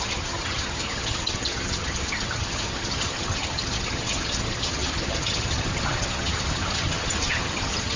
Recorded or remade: remade